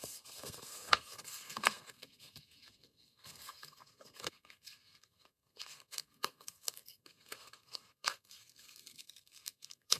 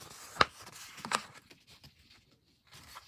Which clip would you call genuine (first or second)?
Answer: second